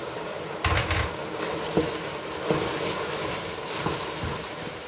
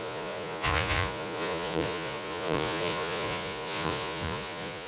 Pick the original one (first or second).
first